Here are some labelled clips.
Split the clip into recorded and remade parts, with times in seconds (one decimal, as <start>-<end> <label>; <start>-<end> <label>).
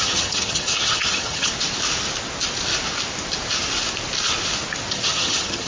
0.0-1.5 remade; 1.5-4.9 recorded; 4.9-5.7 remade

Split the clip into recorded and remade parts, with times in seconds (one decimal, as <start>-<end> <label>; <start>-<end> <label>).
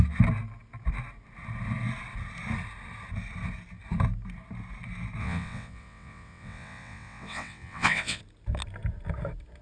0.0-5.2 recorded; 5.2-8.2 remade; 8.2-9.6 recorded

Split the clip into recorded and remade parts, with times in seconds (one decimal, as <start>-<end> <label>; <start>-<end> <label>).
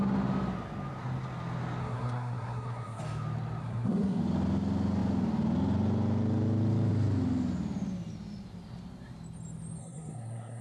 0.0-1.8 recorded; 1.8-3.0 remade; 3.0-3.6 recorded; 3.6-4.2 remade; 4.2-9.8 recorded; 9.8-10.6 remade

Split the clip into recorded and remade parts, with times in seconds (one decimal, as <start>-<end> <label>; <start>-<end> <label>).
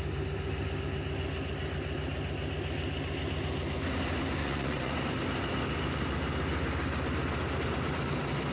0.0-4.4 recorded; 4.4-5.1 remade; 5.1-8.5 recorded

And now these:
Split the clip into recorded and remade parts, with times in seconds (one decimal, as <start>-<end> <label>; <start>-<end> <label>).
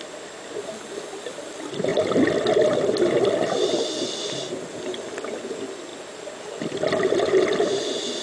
0.0-8.2 recorded